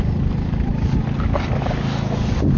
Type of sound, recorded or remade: recorded